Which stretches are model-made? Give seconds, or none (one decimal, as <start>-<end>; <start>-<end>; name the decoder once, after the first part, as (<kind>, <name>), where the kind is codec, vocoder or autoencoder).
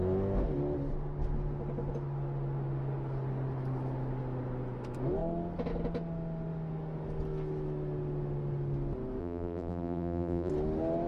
9.2-10.5 (vocoder, BigVGAN v2)